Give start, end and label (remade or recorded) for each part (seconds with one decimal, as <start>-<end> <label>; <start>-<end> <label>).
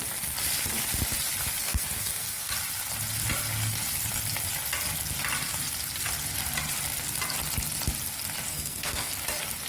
0.0-1.6 recorded; 1.6-2.5 remade; 2.5-8.5 recorded; 8.5-9.1 remade; 9.1-9.7 recorded